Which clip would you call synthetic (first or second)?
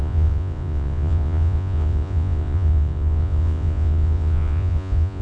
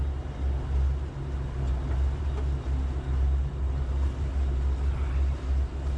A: first